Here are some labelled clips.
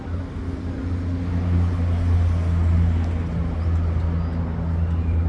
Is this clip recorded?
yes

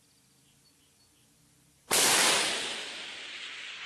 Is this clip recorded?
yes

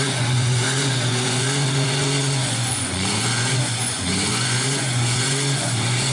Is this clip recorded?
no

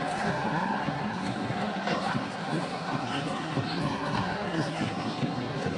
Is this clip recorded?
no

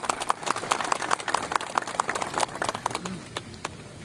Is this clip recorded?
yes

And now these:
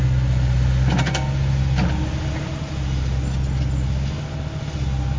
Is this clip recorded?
yes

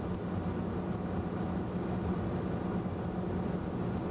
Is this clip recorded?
yes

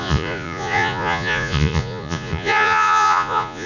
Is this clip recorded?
no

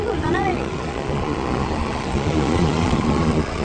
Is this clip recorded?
no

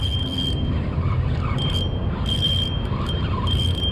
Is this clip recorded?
yes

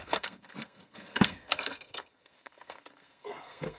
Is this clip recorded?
no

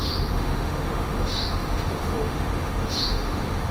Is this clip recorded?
no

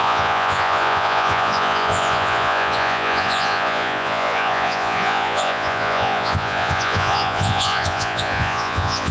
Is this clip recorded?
no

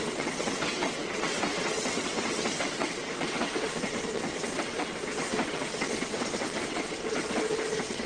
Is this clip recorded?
no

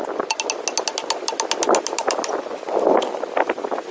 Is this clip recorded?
yes